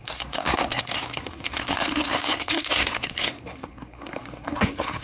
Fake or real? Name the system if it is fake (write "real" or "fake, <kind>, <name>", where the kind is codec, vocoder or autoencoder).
fake, codec, SNAC